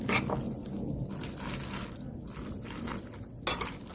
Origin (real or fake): real